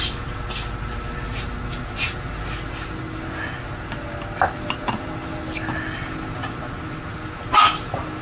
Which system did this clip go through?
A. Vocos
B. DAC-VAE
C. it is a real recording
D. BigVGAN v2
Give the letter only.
C